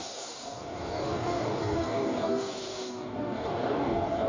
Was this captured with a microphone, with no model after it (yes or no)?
no